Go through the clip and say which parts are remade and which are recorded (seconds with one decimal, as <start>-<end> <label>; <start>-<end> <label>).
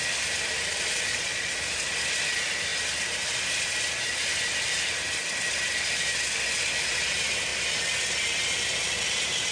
0.0-1.1 recorded; 1.1-1.6 remade; 1.6-9.5 recorded